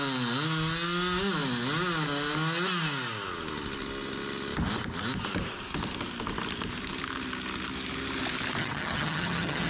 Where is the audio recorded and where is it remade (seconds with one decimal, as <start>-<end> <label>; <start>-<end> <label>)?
0.0-8.6 recorded; 8.6-9.7 remade